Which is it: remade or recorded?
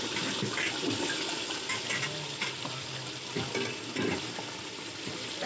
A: recorded